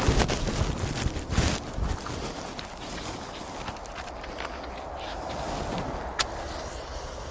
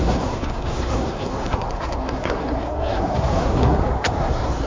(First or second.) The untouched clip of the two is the first